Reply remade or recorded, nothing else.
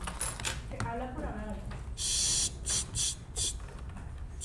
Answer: recorded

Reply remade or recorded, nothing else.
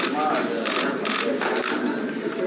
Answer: recorded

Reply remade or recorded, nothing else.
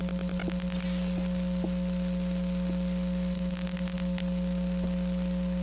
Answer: recorded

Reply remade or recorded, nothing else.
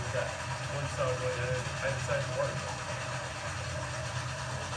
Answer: recorded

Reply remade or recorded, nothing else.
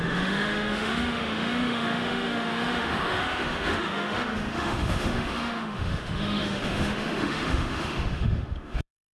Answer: remade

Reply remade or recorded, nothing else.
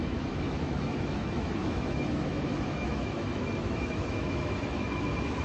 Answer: remade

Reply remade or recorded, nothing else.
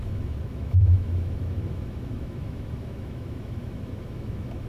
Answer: remade